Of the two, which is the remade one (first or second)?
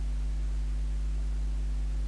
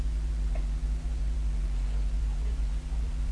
second